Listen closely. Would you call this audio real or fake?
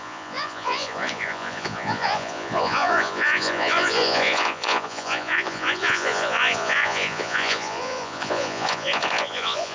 fake